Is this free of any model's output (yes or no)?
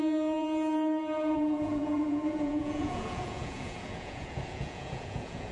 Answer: no